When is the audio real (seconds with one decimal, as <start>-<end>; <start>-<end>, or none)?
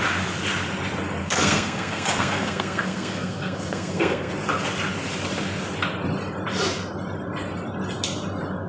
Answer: 0.0-1.2; 4.3-8.7